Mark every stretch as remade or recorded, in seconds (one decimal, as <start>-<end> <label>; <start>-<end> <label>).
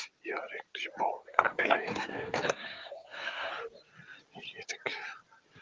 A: 0.0-1.2 recorded; 1.2-3.5 remade; 3.5-5.6 recorded